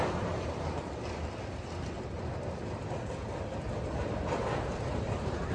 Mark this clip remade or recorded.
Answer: recorded